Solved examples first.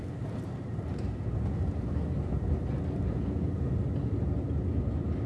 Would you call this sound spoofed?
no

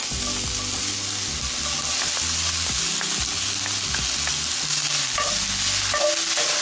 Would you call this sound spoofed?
no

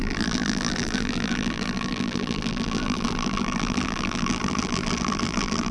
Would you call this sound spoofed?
yes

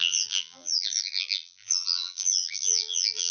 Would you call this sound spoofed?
yes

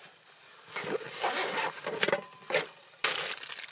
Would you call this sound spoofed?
no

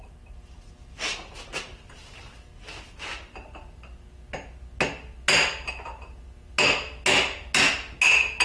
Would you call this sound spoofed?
no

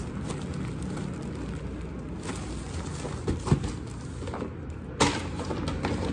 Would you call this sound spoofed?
no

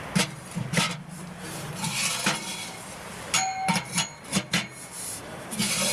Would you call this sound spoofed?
no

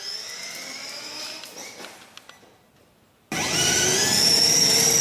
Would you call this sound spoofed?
no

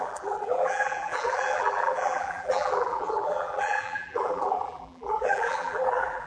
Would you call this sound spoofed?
yes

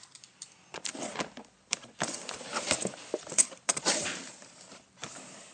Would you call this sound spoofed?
yes